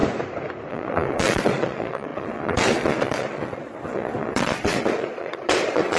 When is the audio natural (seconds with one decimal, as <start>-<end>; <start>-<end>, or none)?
0.0-0.7